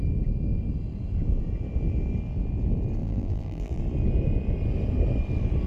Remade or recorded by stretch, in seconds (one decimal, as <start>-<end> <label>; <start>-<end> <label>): 0.0-3.0 recorded; 3.0-3.8 remade; 3.8-5.7 recorded